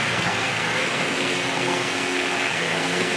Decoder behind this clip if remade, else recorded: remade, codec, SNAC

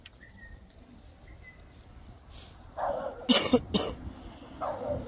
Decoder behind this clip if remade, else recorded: recorded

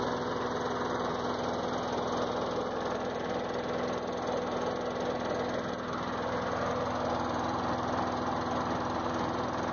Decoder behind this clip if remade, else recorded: recorded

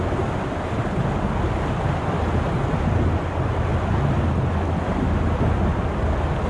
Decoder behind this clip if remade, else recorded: recorded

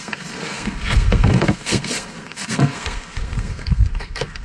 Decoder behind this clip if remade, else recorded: remade, codec, SNAC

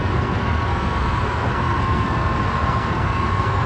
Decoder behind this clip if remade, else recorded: remade, codec, SNAC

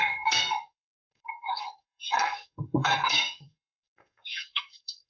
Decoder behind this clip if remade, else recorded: remade, codec, SNAC